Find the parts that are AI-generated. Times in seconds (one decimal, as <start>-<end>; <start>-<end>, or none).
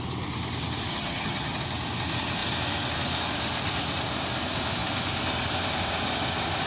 0.9-1.6